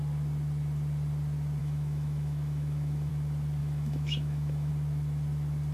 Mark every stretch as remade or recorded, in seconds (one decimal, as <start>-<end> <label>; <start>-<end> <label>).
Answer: 0.0-1.6 recorded; 1.6-3.1 remade; 3.1-3.6 recorded; 3.6-4.7 remade; 4.7-5.7 recorded